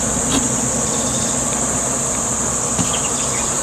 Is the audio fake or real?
real